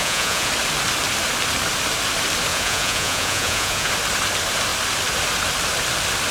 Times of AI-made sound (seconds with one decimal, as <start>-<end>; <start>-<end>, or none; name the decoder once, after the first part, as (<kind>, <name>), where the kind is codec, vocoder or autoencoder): 0.0-0.5 (vocoder, Vocos); 2.5-3.9